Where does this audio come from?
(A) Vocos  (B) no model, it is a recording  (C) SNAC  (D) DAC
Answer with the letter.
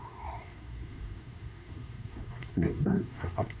C